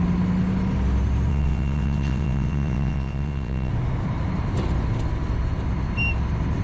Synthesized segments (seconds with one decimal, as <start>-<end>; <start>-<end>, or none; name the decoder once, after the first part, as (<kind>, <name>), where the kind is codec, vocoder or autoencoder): 1.3-3.7 (vocoder, WaveNeXt)